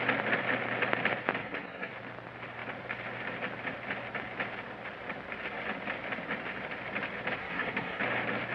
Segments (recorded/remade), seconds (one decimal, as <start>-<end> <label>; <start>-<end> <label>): 0.0-1.4 recorded; 1.4-1.9 remade; 1.9-7.4 recorded; 7.4-8.0 remade; 8.0-8.5 recorded